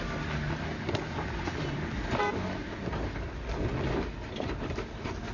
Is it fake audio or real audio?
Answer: real